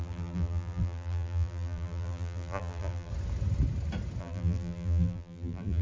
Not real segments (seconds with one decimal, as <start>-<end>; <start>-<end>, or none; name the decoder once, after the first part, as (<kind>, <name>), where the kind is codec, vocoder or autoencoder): 0.0-3.1 (vocoder, BigVGAN v2); 4.2-5.8